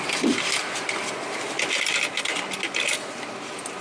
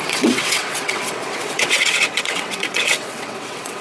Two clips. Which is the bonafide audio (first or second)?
first